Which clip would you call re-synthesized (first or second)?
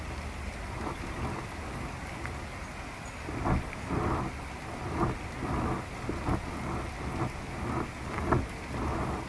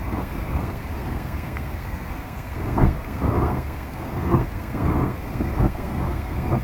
second